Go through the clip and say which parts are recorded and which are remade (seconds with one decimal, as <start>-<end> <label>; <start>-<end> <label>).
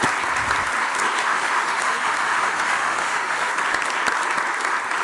0.0-1.2 recorded; 1.2-3.5 remade; 3.5-5.0 recorded